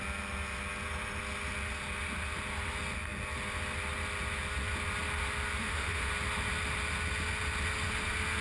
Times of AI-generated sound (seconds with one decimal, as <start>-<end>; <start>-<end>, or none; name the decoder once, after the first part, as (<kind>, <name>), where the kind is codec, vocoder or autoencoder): 5.6-6.1 (autoencoder, DAC-VAE)